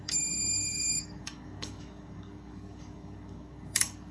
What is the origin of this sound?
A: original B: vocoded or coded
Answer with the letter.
B